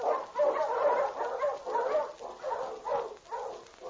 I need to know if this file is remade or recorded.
recorded